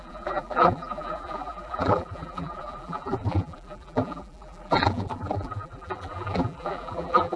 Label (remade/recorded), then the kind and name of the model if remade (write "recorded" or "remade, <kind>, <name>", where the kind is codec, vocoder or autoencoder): remade, vocoder, BigVGAN v2